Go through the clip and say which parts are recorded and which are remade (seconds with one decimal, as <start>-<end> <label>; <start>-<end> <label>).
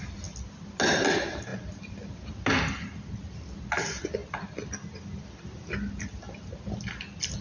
0.0-7.4 recorded